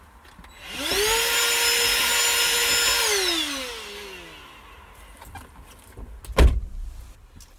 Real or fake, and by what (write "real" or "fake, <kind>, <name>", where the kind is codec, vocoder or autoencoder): real